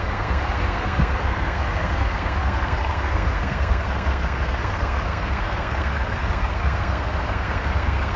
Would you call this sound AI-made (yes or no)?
yes